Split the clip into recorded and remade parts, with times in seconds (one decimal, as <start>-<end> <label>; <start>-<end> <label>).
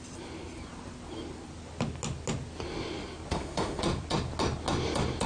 0.0-3.3 recorded; 3.3-3.8 remade; 3.8-5.3 recorded